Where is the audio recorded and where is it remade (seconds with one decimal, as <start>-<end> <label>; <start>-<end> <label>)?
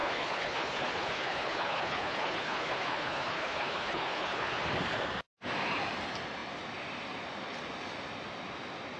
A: 0.0-4.6 remade; 4.6-9.0 recorded